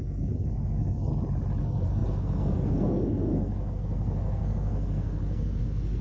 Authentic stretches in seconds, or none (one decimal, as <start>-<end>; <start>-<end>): 1.1-1.6